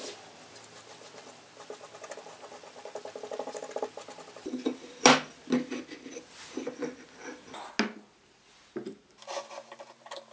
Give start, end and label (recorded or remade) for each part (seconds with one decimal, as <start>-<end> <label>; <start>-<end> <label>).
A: 0.0-10.3 recorded